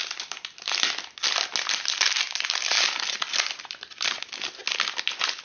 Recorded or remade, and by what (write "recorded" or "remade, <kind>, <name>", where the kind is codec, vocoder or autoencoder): recorded